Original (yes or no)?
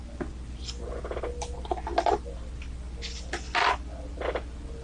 yes